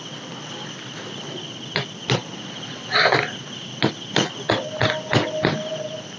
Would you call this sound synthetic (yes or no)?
no